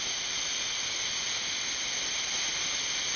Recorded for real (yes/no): yes